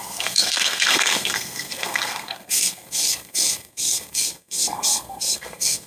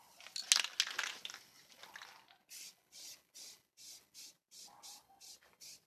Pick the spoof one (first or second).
first